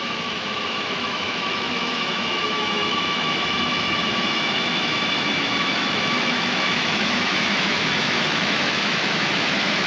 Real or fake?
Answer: fake